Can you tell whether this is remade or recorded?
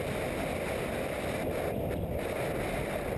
recorded